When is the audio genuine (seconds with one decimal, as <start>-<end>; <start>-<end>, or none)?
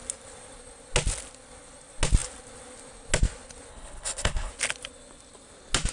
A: 0.0-3.7; 4.5-5.9